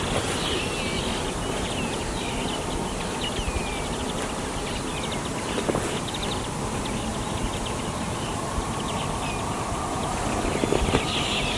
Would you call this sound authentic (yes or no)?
yes